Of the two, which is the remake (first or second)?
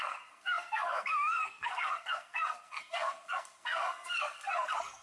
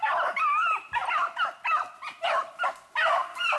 first